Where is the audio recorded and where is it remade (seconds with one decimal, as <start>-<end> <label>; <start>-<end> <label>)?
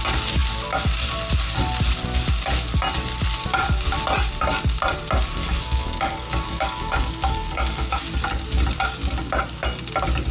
0.0-5.4 recorded; 5.4-8.0 remade; 8.0-10.3 recorded